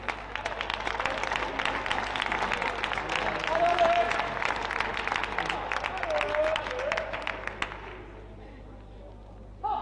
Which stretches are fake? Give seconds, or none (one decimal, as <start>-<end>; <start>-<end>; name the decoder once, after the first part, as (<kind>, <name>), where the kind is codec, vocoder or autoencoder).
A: none